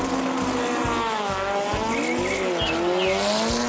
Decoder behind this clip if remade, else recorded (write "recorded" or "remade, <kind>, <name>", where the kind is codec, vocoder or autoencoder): recorded